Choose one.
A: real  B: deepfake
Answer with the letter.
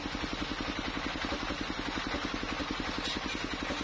A